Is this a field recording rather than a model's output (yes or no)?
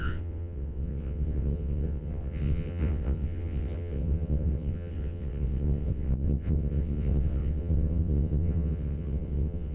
no